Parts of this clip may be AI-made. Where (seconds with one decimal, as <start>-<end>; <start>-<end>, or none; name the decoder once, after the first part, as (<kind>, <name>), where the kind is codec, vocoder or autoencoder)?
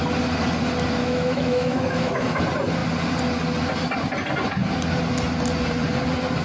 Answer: 1.0-2.4 (autoencoder, DAC-VAE)